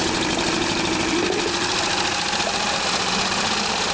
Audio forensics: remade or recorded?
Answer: recorded